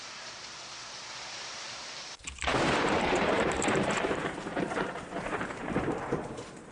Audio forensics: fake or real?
fake